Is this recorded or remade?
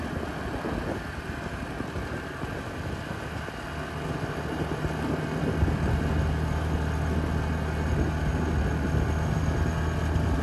recorded